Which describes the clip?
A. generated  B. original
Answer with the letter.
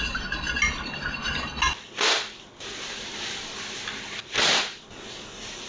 B